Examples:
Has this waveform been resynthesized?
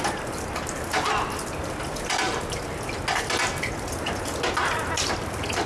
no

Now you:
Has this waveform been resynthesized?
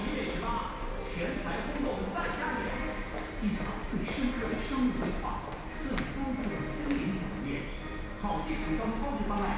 no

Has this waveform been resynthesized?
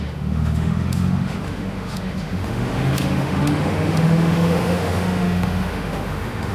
yes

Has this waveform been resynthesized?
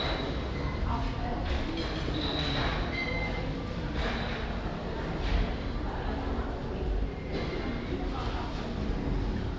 no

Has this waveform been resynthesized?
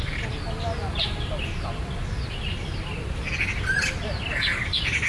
no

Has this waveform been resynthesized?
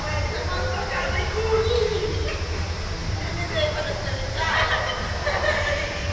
no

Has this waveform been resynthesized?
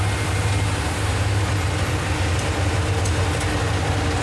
no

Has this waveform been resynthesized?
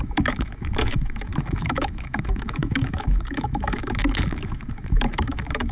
yes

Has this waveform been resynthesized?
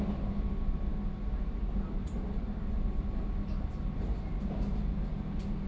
no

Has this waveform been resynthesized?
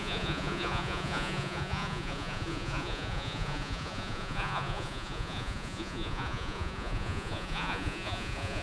yes